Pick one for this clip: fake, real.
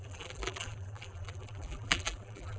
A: fake